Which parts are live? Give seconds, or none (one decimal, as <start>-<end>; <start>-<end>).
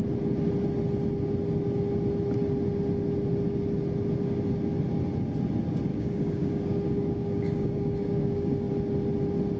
0.0-5.9; 8.7-9.6